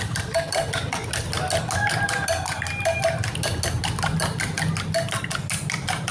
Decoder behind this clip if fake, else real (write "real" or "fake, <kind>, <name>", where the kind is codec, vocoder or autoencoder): real